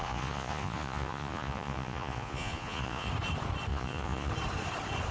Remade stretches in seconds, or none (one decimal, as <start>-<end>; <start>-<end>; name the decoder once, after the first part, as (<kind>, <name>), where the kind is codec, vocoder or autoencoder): 0.0-3.1 (vocoder, Vocos); 3.7-4.3